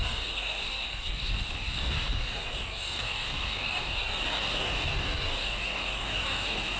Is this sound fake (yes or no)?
yes